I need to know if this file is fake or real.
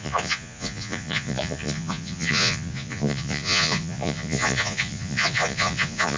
fake